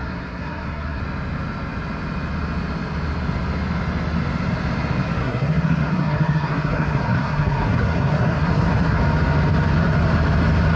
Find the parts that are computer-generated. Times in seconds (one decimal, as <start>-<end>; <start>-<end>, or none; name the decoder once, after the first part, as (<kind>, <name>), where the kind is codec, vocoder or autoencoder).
0.0-1.0 (codec, SNAC); 5.2-9.0